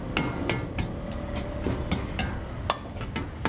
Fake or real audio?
real